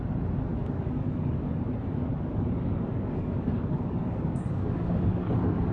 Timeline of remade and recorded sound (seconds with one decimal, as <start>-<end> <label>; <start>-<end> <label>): 0.0-0.5 recorded; 0.5-1.5 remade; 1.5-2.1 recorded; 2.1-5.7 remade